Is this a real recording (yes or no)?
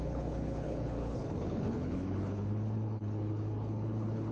no